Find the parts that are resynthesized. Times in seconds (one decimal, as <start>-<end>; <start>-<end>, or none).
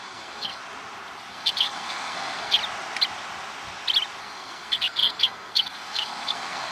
0.0-0.6; 1.3-2.6; 4.2-6.7